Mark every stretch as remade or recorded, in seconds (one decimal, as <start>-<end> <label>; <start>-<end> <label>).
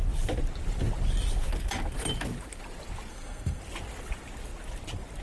0.0-3.1 recorded; 3.1-3.6 remade; 3.6-5.2 recorded